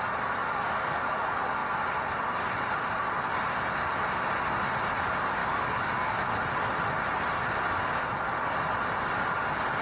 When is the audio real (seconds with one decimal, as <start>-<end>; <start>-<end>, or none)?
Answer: 0.0-0.4; 1.1-5.4; 6.3-9.8